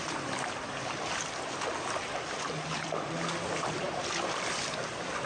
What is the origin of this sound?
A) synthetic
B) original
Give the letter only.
B